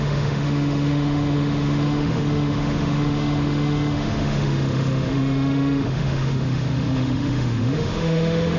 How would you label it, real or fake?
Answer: fake